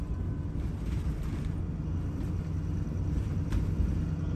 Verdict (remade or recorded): recorded